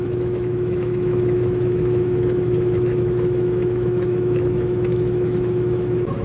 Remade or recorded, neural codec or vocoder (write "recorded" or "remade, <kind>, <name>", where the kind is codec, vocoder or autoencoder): remade, autoencoder, DAC-VAE